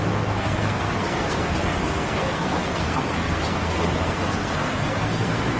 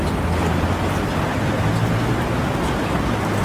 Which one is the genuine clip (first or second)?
second